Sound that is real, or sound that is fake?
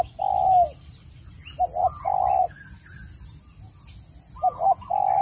real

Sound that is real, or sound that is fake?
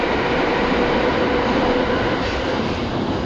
real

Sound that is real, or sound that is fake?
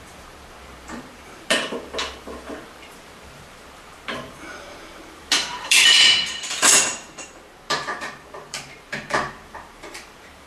fake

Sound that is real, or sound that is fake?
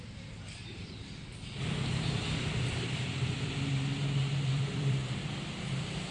fake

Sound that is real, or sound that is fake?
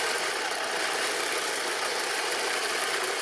real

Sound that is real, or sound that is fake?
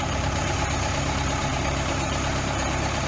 fake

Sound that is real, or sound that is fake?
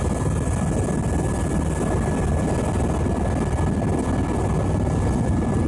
real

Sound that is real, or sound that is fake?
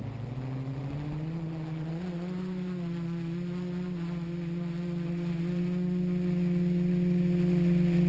real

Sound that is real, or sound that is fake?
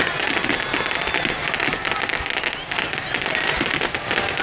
real